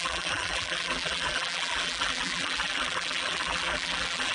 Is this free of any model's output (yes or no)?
no